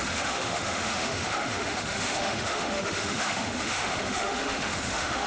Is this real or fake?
fake